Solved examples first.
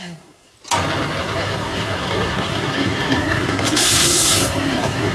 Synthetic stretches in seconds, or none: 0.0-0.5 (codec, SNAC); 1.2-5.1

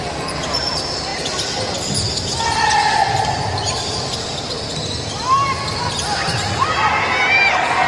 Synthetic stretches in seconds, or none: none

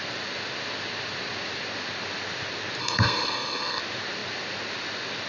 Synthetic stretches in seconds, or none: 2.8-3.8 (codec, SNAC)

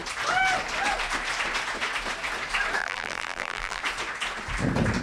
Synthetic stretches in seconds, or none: 2.8-3.8 (vocoder, BigVGAN v2)

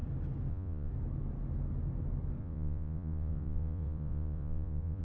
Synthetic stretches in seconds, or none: 0.5-0.9 (vocoder, Vocos); 2.4-5.0